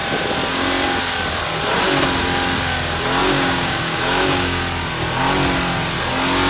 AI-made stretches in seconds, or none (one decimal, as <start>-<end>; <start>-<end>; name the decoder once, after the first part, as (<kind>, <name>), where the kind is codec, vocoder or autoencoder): 3.2-4.6 (codec, DAC)